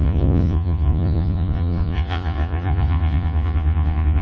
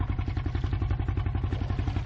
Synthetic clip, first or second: first